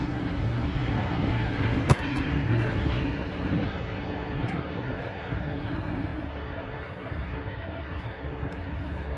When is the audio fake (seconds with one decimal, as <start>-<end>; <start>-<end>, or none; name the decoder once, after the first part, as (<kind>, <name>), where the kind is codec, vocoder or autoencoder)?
0.0-9.2 (codec, SNAC)